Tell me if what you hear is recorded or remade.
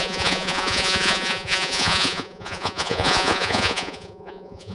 remade